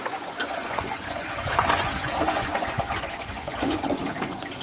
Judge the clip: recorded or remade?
remade